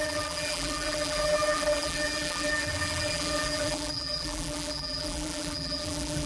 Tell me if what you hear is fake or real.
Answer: fake